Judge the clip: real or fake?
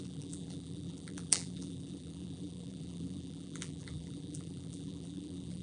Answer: fake